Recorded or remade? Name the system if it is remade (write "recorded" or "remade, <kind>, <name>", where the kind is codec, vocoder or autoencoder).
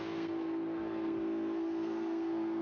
remade, codec, SNAC